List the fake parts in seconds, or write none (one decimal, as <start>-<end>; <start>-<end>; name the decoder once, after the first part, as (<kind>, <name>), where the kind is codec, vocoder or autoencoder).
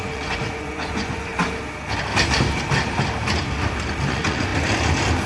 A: 0.0-1.3 (vocoder, Vocos); 4.1-4.5